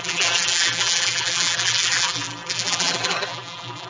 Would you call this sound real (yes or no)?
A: no